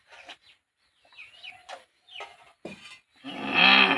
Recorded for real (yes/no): yes